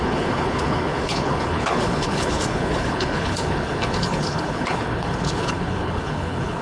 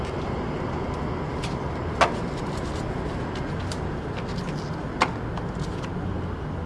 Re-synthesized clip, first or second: first